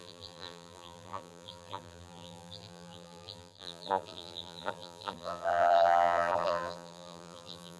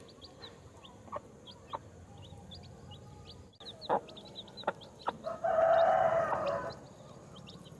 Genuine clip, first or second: second